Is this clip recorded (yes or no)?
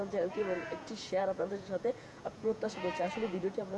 no